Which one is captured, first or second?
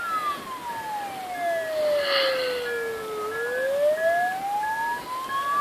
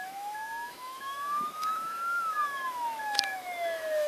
first